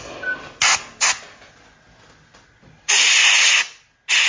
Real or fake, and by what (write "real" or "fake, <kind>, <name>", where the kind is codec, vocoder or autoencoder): real